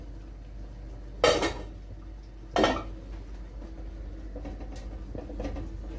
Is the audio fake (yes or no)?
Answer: no